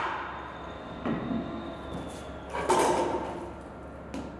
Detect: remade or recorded recorded